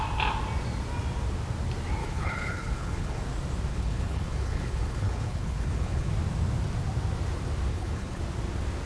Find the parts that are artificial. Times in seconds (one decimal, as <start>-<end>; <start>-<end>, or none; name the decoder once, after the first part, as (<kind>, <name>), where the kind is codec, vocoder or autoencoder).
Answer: 2.0-3.2 (codec, HILCodec); 3.7-6.1; 7.7-8.2